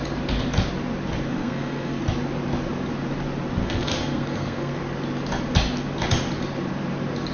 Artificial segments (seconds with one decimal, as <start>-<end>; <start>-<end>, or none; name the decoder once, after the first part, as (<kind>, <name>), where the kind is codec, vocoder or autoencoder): 1.3-2.0 (codec, SNAC); 3.6-4.8